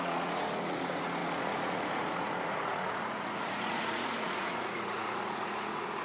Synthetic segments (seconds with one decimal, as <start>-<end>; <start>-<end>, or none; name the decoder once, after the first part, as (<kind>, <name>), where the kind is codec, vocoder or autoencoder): 0.0-6.0 (vocoder, Vocos)